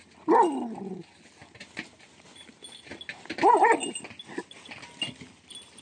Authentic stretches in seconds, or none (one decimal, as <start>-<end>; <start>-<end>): 0.0-5.8